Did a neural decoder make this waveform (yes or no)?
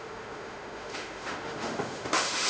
yes